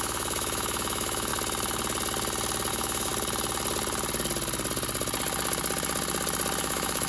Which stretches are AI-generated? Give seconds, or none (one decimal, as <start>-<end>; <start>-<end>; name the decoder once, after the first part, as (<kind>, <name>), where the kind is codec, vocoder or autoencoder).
0.0-1.3 (autoencoder, DAC-VAE); 2.7-3.1; 6.6-7.1